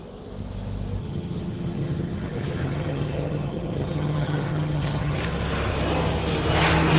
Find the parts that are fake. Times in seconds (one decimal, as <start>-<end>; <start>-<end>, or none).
1.0-5.2